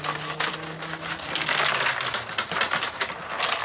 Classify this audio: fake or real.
real